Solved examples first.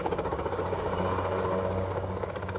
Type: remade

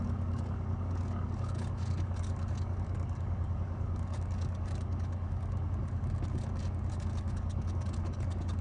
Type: remade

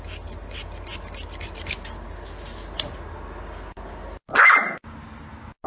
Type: recorded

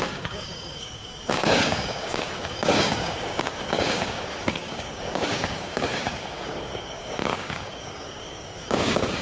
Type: remade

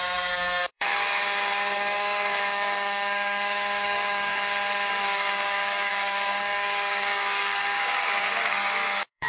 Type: remade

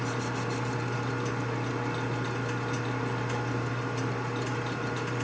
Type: recorded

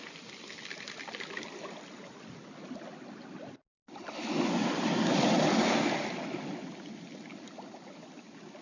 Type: recorded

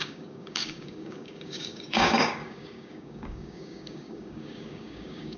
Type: remade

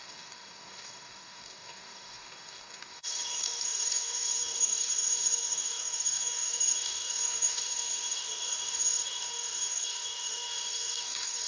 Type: remade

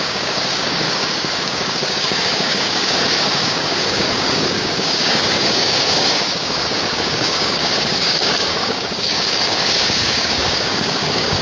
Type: remade